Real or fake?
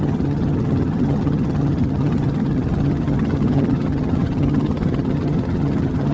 fake